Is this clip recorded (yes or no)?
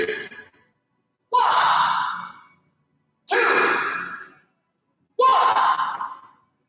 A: yes